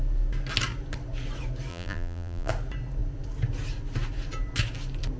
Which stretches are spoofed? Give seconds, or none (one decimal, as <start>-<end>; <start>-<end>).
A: 1.7-2.5